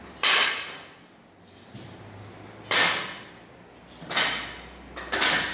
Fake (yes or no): no